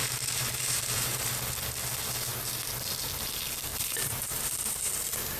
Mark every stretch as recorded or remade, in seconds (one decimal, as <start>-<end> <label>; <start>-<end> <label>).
0.0-1.3 remade; 1.3-3.7 recorded; 3.7-4.9 remade; 4.9-5.4 recorded

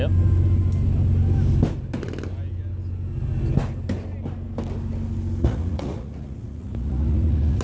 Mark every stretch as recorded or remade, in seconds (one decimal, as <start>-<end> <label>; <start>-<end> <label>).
0.0-5.4 recorded; 5.4-7.6 remade

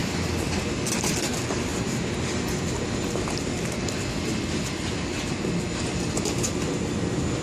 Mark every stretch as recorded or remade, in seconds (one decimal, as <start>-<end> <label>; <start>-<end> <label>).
0.0-1.1 remade; 1.1-7.4 recorded

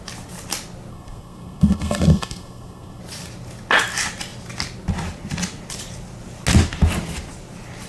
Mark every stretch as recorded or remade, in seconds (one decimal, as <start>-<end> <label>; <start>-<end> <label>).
0.0-0.9 recorded; 0.9-3.0 remade; 3.0-7.9 recorded

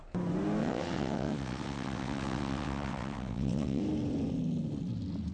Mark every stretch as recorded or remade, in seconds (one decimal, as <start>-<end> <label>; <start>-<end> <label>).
0.0-0.6 recorded; 0.6-3.8 remade; 3.8-5.3 recorded